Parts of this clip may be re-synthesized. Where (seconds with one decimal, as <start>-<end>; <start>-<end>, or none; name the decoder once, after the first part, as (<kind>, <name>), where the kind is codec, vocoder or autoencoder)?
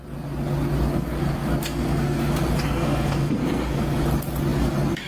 0.9-4.0 (codec, SNAC)